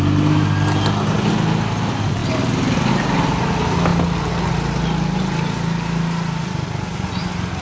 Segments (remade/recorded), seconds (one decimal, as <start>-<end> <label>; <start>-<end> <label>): 0.0-7.6 recorded